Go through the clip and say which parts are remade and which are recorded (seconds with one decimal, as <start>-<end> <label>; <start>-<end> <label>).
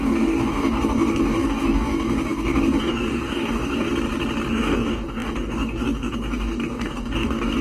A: 0.0-3.9 remade; 3.9-4.5 recorded; 4.5-7.6 remade